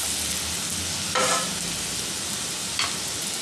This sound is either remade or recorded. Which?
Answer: recorded